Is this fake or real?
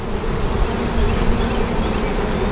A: real